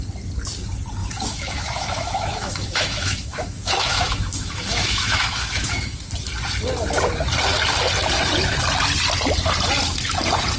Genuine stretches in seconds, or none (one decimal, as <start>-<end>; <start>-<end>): 0.0-1.0; 6.1-10.6